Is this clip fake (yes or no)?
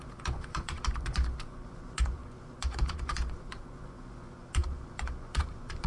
yes